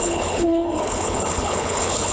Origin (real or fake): fake